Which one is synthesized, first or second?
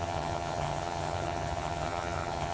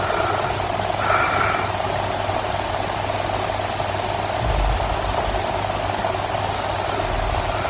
first